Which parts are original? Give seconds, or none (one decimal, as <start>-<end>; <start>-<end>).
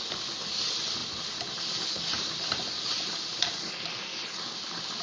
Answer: 0.0-1.0; 4.0-5.0